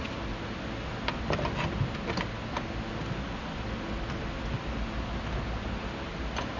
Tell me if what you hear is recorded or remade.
recorded